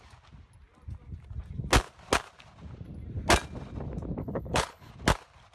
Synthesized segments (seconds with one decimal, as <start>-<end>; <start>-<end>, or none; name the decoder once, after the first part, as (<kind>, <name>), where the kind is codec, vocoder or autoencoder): 4.2-4.9 (codec, HILCodec)